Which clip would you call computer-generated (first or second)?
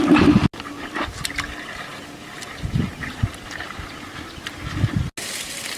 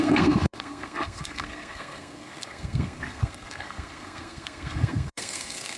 second